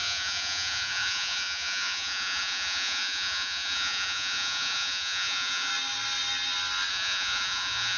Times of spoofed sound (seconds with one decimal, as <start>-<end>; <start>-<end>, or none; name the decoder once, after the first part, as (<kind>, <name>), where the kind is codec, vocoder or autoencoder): 0.0-5.7 (vocoder, Vocos); 6.9-8.0